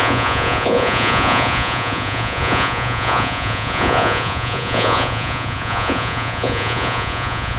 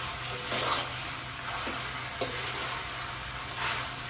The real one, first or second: second